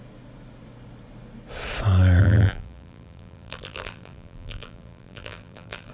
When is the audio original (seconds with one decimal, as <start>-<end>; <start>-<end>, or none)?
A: 0.0-2.2